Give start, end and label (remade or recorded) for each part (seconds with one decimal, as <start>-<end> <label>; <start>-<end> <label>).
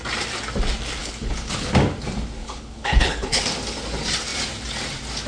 0.0-1.0 recorded; 1.0-1.7 remade; 1.7-2.4 recorded; 2.4-3.4 remade; 3.4-5.3 recorded